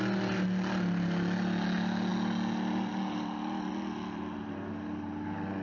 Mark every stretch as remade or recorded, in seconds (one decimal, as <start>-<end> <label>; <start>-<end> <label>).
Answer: 0.0-5.6 recorded